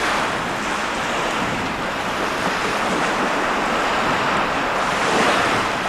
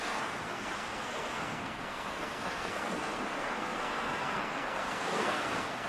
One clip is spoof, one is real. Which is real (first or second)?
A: first